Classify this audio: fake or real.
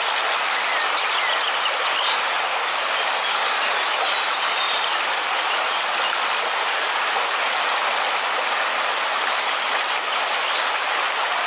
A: real